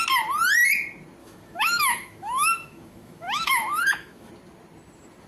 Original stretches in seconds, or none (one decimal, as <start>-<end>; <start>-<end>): 0.0-1.2; 4.3-5.3